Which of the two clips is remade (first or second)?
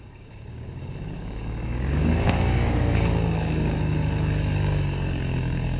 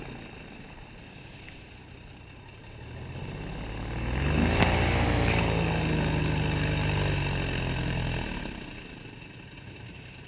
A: first